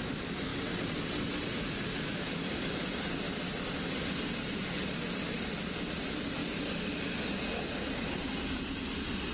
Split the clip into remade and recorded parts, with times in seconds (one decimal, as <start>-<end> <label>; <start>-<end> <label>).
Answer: 0.0-9.3 recorded